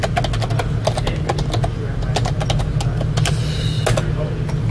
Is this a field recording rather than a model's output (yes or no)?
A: yes